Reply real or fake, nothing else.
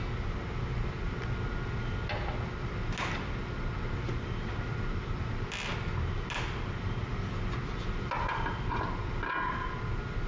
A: real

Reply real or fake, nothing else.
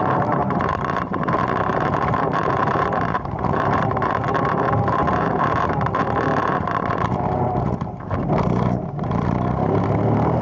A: fake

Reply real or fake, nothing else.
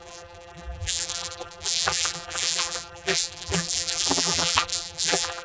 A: fake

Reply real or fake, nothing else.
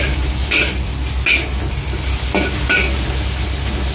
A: real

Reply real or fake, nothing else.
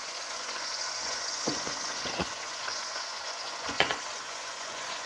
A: fake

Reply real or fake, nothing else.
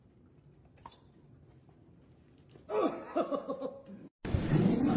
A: real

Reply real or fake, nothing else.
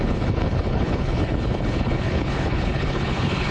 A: fake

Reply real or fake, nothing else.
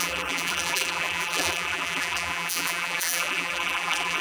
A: fake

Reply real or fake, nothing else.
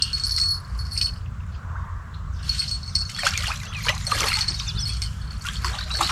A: real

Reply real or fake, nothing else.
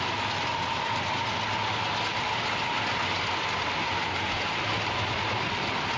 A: real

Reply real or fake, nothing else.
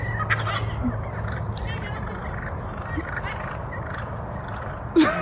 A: real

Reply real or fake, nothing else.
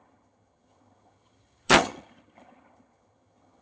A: fake